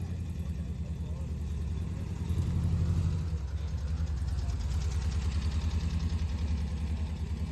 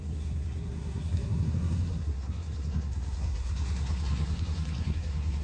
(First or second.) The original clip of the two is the first